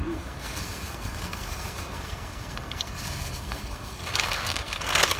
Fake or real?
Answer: fake